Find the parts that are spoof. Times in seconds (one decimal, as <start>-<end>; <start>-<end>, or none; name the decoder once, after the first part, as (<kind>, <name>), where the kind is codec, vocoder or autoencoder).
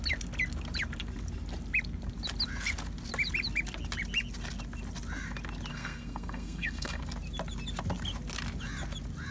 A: 5.7-7.0 (codec, SNAC)